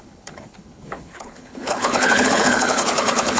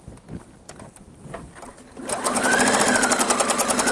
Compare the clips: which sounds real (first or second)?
second